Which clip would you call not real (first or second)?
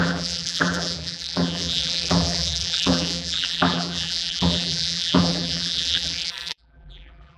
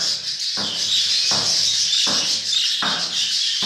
first